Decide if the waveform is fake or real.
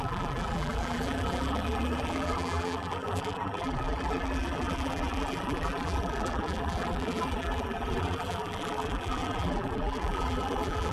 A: fake